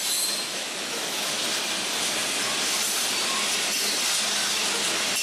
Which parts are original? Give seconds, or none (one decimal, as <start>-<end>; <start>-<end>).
0.0-0.5; 1.3-5.2